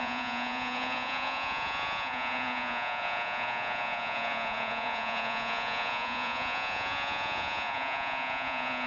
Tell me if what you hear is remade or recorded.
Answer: remade